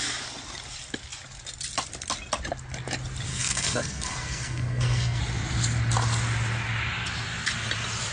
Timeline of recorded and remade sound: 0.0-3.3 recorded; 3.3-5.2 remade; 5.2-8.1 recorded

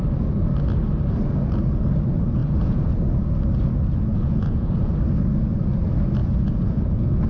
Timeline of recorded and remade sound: 0.0-2.4 recorded; 2.4-2.9 remade; 2.9-4.1 recorded; 4.1-4.9 remade; 4.9-6.2 recorded; 6.2-7.3 remade